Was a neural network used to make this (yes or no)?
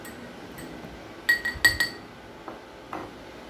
no